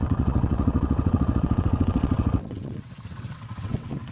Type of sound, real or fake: fake